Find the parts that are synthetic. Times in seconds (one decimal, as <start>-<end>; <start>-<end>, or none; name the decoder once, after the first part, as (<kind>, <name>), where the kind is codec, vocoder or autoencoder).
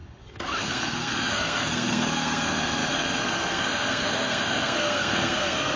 0.6-5.8 (codec, SNAC)